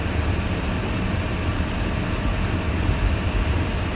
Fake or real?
real